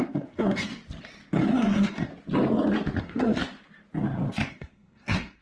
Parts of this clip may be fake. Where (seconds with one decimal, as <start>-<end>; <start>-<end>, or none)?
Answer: 0.0-0.7; 1.4-2.1; 3.0-3.4; 4.5-5.4